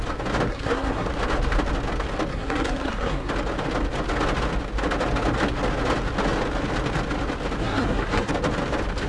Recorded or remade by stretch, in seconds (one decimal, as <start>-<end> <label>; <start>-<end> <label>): 0.0-0.5 recorded; 0.5-1.1 remade; 1.1-2.3 recorded; 2.3-3.3 remade; 3.3-7.6 recorded; 7.6-8.3 remade; 8.3-9.1 recorded